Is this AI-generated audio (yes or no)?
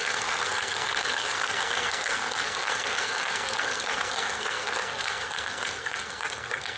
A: yes